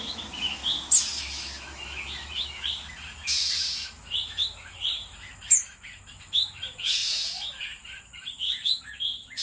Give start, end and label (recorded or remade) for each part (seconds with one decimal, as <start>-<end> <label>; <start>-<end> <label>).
0.0-0.6 remade; 0.6-1.2 recorded; 1.2-9.4 remade